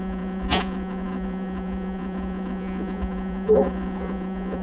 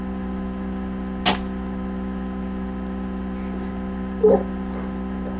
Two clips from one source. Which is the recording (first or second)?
second